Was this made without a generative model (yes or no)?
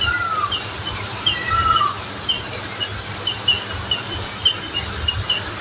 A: yes